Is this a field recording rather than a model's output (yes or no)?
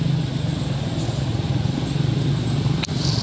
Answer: yes